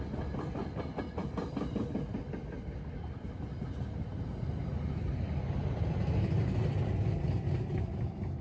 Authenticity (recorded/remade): recorded